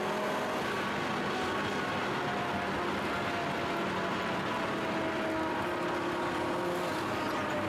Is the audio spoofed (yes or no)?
no